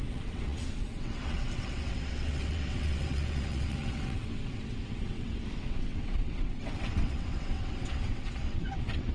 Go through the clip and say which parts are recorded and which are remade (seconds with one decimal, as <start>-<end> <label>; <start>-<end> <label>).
0.0-9.1 remade